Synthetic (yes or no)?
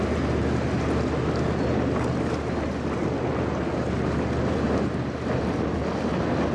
no